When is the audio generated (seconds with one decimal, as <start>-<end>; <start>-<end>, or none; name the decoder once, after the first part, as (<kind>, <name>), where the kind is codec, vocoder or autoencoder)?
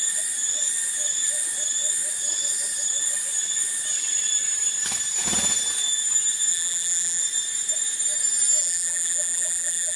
6.5-7.2 (vocoder, BigVGAN v2); 8.6-10.0